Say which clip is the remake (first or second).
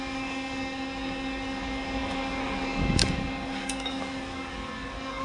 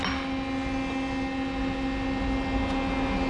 first